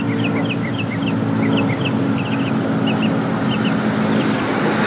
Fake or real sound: real